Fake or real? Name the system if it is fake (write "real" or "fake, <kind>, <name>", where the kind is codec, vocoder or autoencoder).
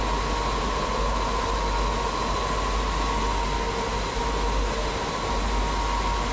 real